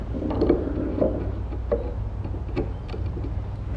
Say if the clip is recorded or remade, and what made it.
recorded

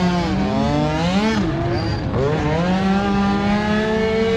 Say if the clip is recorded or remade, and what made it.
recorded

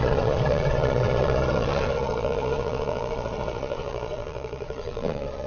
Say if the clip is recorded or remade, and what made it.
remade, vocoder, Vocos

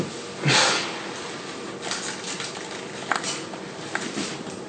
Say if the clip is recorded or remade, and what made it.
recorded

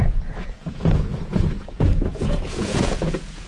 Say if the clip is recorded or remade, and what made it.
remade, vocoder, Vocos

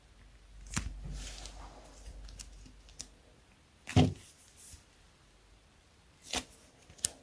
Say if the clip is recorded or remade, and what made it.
recorded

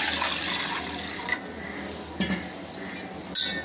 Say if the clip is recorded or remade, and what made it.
recorded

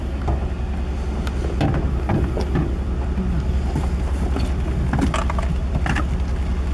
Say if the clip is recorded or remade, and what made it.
recorded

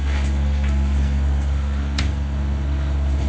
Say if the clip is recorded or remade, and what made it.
remade, codec, SNAC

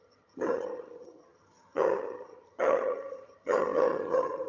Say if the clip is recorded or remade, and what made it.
remade, vocoder, HiFi-GAN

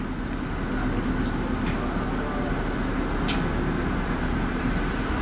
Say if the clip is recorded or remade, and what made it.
recorded